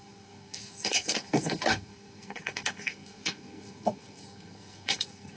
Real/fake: fake